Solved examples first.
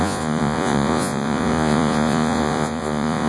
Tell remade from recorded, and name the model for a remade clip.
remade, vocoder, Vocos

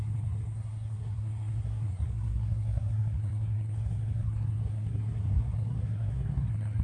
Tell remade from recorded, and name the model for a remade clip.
remade, codec, SNAC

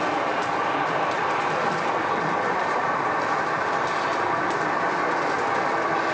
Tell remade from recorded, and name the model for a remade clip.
recorded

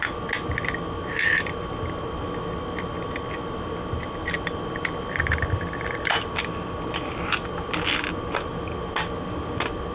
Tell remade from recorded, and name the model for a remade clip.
recorded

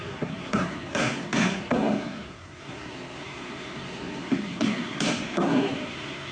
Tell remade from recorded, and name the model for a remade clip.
remade, codec, SNAC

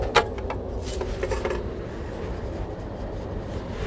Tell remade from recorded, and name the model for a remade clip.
recorded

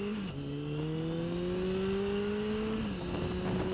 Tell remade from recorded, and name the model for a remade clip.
recorded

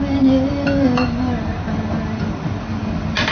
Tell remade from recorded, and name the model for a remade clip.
recorded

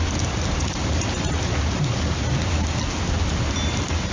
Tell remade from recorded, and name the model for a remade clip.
recorded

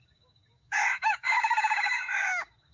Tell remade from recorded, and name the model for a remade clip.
remade, codec, DAC